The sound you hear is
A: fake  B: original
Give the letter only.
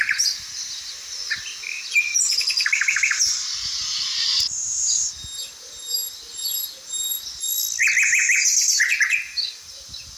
B